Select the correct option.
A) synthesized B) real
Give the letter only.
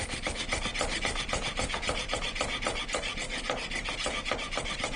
B